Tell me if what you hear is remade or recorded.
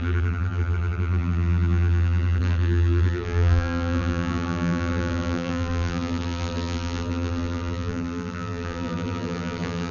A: remade